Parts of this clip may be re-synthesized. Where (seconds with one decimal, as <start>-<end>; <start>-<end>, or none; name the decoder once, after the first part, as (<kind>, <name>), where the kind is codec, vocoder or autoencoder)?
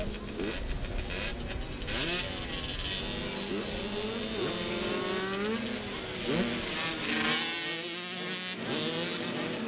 none